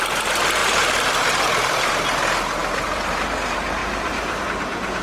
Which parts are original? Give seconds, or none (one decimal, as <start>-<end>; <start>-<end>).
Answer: 0.0-0.6; 1.9-3.8; 4.4-5.0